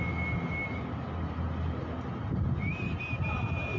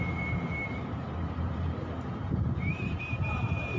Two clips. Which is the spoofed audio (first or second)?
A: second